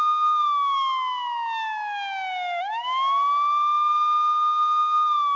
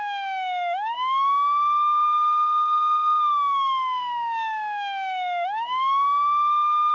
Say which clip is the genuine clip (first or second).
first